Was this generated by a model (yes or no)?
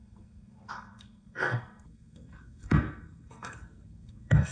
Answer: yes